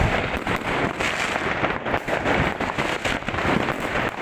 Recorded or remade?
recorded